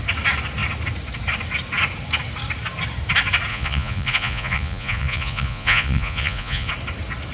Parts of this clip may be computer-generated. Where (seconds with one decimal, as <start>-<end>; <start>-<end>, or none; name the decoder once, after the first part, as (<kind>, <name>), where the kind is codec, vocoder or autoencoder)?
3.5-6.7 (vocoder, Vocos)

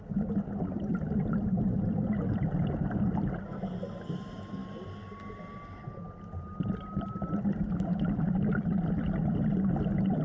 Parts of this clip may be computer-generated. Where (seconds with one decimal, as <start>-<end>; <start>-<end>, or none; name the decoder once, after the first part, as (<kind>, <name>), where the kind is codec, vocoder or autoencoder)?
none

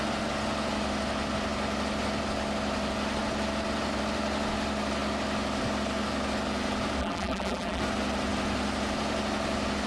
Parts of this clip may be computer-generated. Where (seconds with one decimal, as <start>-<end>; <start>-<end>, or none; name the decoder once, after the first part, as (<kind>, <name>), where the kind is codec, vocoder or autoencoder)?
7.0-7.8 (vocoder, BigVGAN v2)

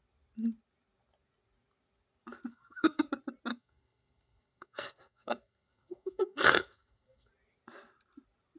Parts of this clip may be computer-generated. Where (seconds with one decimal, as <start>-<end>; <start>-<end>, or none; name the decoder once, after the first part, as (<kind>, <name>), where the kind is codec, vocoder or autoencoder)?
2.5-3.1 (codec, SNAC); 3.5-7.3

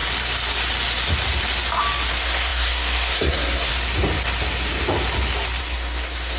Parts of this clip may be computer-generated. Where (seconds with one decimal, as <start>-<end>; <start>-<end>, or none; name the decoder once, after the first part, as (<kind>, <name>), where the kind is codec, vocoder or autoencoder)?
2.1-3.7 (codec, SNAC); 5.6-6.4

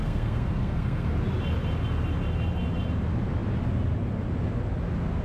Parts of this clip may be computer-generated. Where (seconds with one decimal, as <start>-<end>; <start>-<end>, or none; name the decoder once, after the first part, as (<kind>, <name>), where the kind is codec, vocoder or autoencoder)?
0.0-1.1 (codec, SNAC)

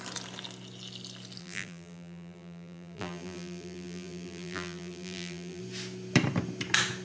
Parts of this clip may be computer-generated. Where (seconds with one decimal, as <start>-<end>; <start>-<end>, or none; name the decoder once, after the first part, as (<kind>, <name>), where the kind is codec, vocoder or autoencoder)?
1.4-5.6 (vocoder, BigVGAN v2)

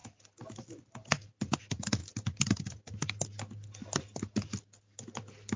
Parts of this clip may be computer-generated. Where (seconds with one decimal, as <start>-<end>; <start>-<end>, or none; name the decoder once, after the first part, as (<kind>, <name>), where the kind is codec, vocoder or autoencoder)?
none